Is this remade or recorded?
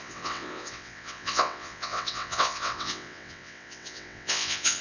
remade